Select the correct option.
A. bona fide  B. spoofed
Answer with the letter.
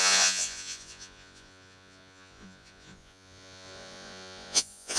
B